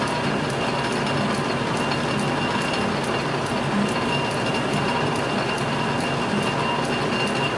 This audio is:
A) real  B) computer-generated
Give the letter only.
A